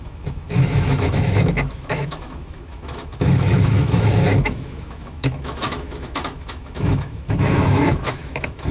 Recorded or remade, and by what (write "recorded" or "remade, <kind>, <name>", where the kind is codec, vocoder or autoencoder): remade, autoencoder, DAC-VAE